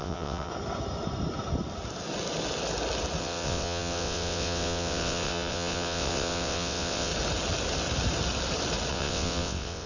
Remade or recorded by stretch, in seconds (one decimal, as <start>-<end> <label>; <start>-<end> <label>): 0.0-0.5 remade; 0.5-3.2 recorded; 3.2-7.1 remade; 7.1-8.9 recorded; 8.9-9.9 remade